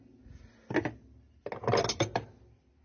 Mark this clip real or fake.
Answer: real